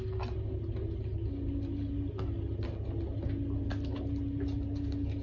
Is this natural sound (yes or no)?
yes